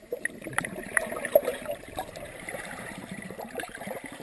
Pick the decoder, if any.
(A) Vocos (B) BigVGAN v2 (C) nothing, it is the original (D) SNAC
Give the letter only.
B